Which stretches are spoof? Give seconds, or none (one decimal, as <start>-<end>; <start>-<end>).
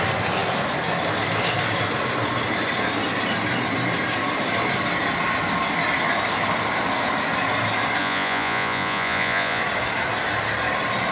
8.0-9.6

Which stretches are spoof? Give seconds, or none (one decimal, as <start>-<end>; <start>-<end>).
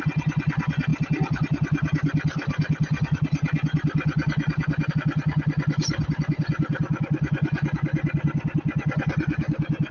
none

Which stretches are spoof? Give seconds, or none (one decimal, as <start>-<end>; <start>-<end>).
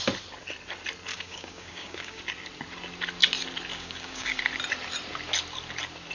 1.1-2.2; 3.7-4.4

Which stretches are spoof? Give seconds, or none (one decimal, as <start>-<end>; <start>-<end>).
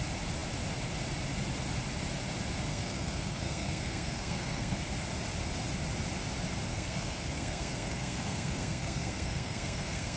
2.7-4.8; 6.7-10.2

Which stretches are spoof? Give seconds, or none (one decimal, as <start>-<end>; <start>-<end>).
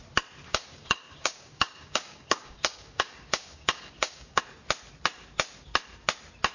0.5-4.4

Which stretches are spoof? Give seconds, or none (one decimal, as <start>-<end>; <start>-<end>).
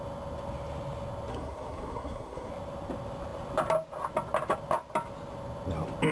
1.3-2.5